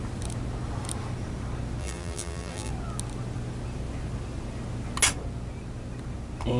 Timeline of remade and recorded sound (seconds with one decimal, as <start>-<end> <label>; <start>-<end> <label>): 0.0-1.8 recorded; 1.8-2.7 remade; 2.7-6.6 recorded

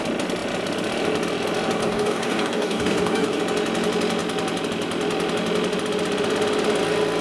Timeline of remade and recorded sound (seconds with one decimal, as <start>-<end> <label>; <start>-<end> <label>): 0.0-1.8 recorded; 1.8-3.4 remade; 3.4-7.2 recorded

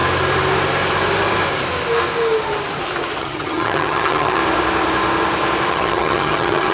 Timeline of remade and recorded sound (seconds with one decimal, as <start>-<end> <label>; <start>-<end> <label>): 0.0-3.2 recorded; 3.2-4.4 remade; 4.4-5.7 recorded; 5.7-6.7 remade

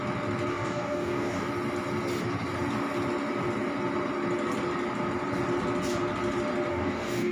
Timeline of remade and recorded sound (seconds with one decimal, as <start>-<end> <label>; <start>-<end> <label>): 0.0-0.5 recorded; 0.5-1.5 remade; 1.5-6.7 recorded; 6.7-7.3 remade

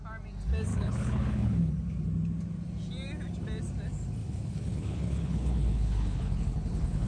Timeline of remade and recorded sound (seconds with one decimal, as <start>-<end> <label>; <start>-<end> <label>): 0.0-0.7 recorded; 0.7-1.7 remade; 1.7-4.2 recorded; 4.2-7.1 remade